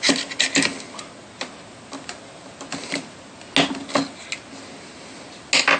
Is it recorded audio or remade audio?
recorded